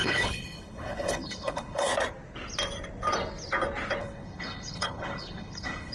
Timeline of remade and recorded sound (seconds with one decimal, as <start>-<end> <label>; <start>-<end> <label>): 0.0-1.9 remade; 1.9-4.0 recorded; 4.0-5.9 remade